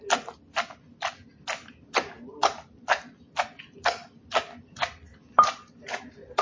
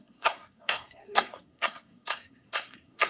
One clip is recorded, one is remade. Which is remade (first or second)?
second